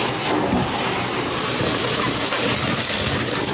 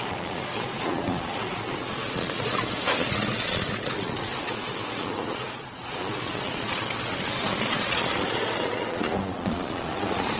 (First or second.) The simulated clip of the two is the second